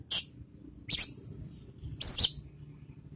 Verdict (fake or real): real